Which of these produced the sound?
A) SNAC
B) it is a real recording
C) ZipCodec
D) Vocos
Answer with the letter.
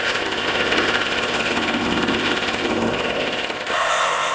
C